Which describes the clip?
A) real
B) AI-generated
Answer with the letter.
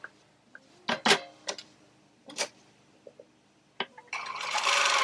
A